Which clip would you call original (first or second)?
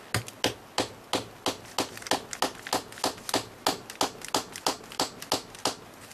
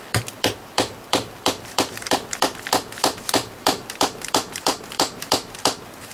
first